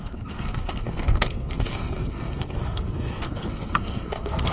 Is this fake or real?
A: fake